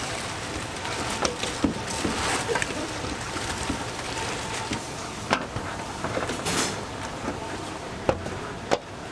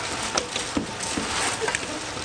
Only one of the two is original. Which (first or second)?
second